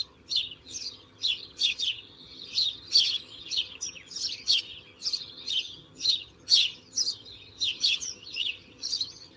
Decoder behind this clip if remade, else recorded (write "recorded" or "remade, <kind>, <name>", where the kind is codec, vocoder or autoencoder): remade, vocoder, HiFi-GAN